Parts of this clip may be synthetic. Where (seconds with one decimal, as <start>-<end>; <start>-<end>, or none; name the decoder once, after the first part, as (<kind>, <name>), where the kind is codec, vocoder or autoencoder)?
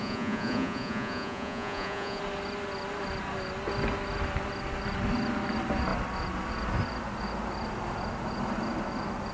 0.0-2.2 (vocoder, Vocos)